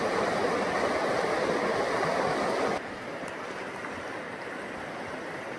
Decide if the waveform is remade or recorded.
recorded